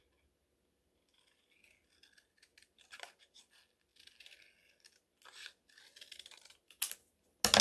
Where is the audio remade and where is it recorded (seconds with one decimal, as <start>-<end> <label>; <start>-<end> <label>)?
0.0-7.6 recorded